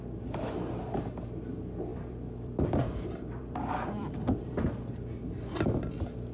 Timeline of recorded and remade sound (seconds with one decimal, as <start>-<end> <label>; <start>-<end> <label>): 0.0-1.9 recorded; 1.9-5.7 remade; 5.7-6.3 recorded